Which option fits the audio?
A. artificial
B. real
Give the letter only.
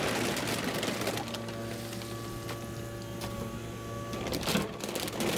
B